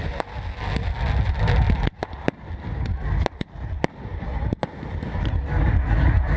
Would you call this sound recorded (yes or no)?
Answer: yes